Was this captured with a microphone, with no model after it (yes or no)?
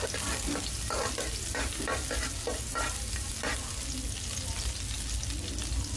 yes